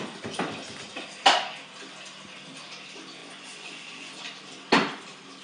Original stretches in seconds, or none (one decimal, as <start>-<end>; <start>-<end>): 0.0-3.2; 4.1-5.4